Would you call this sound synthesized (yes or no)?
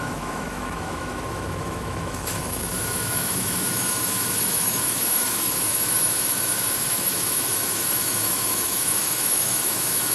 yes